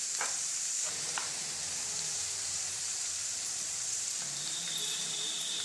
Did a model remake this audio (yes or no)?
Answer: yes